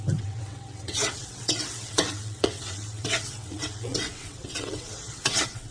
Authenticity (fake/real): fake